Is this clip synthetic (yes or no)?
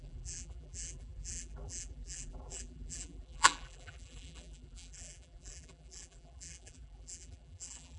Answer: yes